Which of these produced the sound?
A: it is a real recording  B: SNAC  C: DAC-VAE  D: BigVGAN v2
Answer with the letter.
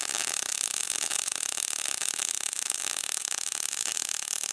C